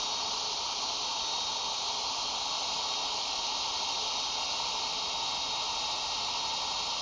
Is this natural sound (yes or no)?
yes